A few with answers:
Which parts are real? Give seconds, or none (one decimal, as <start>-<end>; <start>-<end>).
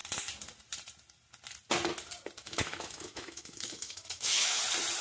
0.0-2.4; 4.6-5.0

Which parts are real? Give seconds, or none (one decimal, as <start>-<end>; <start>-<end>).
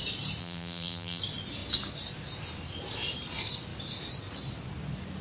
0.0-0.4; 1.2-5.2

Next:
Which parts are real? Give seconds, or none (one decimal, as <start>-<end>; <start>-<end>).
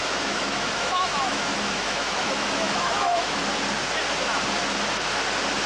3.4-5.7